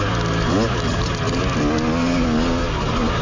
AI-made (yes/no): no